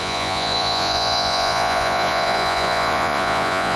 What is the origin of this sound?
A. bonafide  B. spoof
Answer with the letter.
B